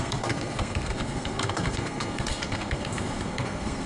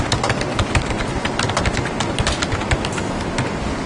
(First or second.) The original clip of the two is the second